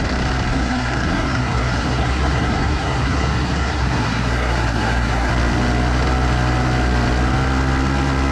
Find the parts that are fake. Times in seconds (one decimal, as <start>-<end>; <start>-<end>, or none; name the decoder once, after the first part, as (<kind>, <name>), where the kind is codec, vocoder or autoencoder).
0.5-5.3 (codec, SNAC)